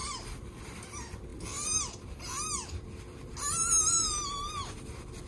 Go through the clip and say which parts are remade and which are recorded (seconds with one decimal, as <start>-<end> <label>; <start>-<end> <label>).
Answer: 0.0-0.6 remade; 0.6-5.3 recorded